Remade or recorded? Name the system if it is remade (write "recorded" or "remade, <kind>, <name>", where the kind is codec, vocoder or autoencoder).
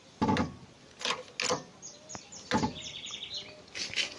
recorded